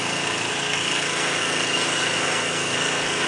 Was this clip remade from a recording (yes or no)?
yes